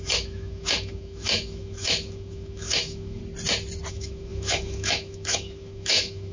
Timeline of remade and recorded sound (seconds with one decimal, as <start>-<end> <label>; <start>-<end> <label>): 0.0-3.2 remade; 3.2-3.9 recorded; 3.9-6.3 remade